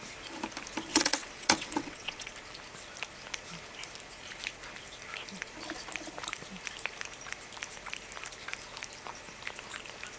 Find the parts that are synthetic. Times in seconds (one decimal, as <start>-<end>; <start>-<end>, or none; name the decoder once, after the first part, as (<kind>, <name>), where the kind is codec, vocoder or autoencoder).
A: 0.9-2.3 (vocoder, WaveNeXt)